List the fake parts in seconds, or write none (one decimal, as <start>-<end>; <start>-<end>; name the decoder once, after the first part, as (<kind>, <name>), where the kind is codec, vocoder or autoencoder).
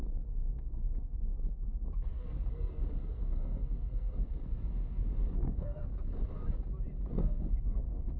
0.0-5.9 (codec, SNAC); 7.1-8.2